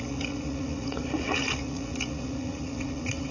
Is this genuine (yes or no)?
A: no